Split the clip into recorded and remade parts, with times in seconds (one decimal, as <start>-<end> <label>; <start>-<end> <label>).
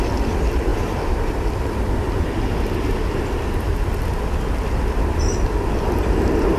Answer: 0.0-6.6 recorded